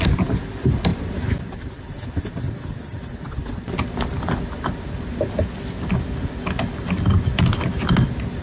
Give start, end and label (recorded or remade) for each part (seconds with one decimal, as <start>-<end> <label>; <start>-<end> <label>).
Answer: 0.0-8.4 recorded